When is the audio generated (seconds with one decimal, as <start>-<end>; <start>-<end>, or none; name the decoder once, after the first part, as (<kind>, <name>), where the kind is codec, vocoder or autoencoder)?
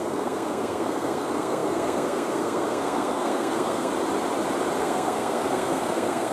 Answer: 0.0-3.9 (codec, SNAC); 4.8-6.3